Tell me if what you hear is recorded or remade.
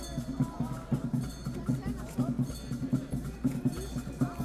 recorded